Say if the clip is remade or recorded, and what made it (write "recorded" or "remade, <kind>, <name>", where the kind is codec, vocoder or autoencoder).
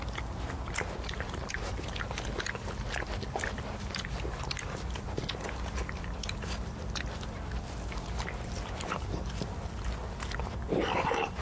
recorded